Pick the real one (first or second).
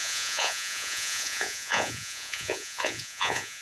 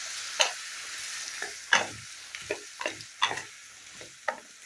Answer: second